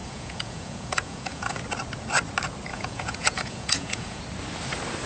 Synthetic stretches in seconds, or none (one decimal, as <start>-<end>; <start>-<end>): 0.0-1.6; 2.7-4.2